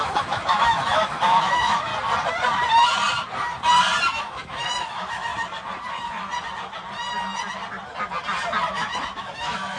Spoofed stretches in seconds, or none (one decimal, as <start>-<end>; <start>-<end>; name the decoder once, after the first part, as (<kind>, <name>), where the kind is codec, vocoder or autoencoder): 0.0-1.9 (autoencoder, DAC-VAE); 4.2-5.3; 8.7-9.8